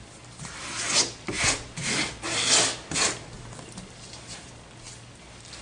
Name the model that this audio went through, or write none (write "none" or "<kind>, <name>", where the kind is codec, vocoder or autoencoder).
none